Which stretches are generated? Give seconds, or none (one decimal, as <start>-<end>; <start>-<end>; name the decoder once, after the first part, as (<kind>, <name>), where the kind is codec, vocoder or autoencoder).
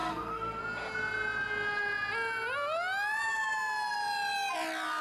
0.0-0.6 (codec, SNAC)